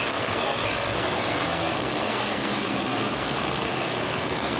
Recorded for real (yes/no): no